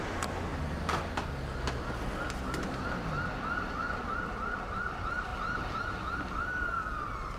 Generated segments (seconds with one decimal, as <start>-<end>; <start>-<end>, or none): 0.0-0.5; 4.3-5.3; 6.2-7.4